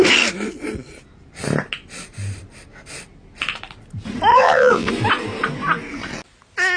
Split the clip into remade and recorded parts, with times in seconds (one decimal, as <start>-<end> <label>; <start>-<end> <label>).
0.0-4.3 recorded; 4.3-4.9 remade; 4.9-6.8 recorded